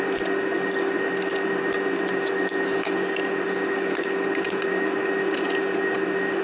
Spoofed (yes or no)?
no